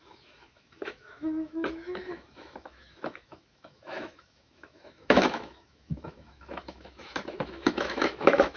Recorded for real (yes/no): no